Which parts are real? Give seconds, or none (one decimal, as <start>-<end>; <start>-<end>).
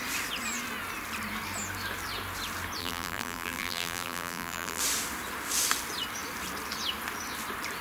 0.0-2.8; 4.8-7.8